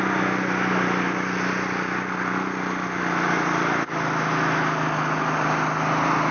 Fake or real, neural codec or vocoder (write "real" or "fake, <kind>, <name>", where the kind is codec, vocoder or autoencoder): real